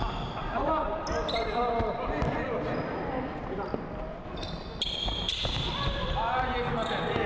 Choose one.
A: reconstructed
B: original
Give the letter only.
B